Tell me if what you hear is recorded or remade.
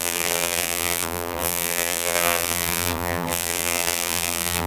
remade